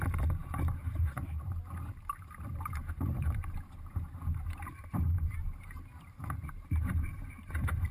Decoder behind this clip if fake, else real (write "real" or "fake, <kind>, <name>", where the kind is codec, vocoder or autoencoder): fake, vocoder, BigVGAN v2